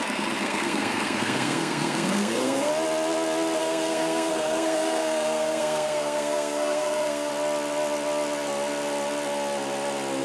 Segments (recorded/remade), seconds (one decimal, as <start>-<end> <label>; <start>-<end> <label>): 0.0-2.7 remade; 2.7-3.6 recorded; 3.6-7.3 remade; 7.3-10.2 recorded